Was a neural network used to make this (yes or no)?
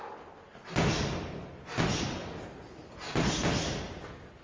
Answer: no